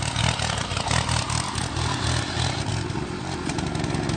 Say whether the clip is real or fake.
real